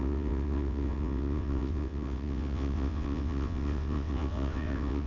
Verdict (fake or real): fake